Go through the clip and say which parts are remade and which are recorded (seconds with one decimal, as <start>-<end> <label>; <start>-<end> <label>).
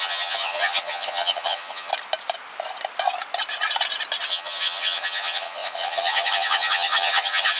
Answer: 0.0-1.9 remade; 1.9-4.3 recorded; 4.3-7.6 remade